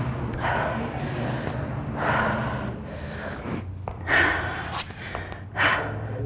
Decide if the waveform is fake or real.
real